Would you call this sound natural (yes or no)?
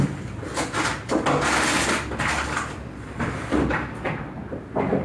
yes